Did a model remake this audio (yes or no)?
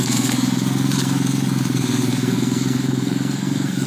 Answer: yes